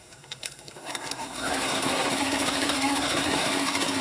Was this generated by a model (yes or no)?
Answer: yes